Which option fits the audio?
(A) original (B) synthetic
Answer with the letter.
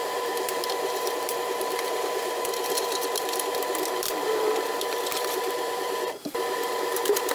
B